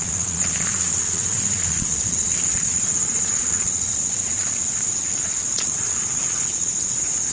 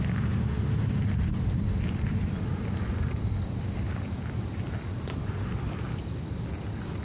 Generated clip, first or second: first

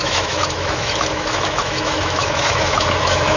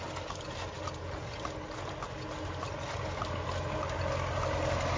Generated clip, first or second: first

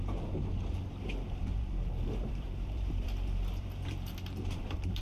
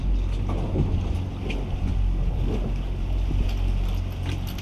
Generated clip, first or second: first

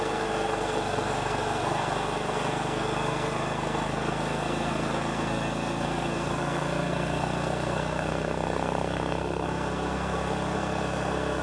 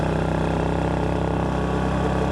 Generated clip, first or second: first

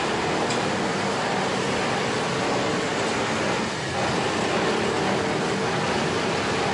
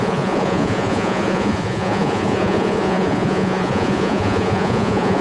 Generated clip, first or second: second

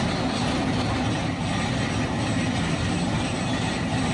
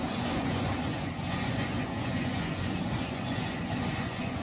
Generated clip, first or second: second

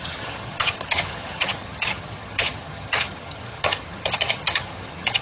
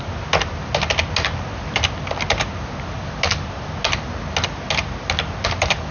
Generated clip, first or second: first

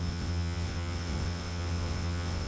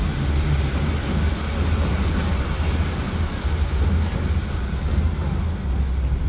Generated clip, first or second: first